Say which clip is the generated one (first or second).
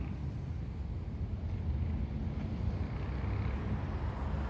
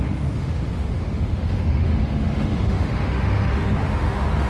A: second